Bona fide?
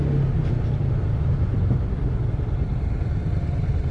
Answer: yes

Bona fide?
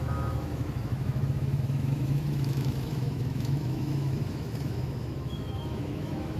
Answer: no